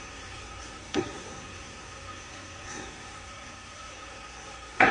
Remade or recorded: remade